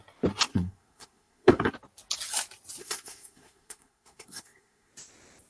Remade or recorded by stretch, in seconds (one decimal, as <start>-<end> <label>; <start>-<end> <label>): 0.0-0.5 recorded; 0.5-1.7 remade; 1.7-2.8 recorded; 2.8-4.9 remade; 4.9-5.5 recorded